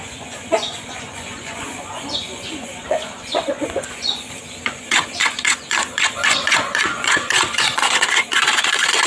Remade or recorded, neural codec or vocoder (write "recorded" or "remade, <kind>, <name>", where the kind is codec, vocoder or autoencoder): remade, vocoder, Vocos